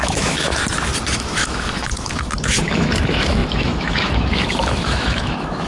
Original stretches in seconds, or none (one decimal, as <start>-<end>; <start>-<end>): 0.6-1.1

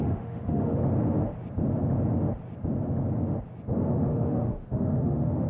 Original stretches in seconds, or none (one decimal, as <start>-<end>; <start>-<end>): 0.8-4.1

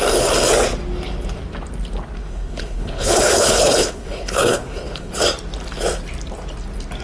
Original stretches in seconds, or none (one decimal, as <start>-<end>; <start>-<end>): 0.0-2.2; 5.1-7.0

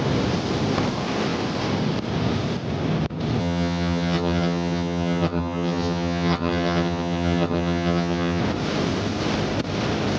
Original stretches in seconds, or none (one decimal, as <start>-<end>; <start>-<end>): 0.0-3.4; 8.4-10.2

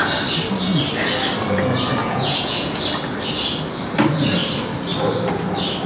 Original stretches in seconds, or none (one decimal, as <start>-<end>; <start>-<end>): 0.0-2.0; 2.8-5.9